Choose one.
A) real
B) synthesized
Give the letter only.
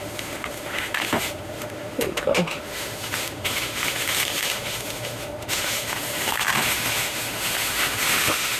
B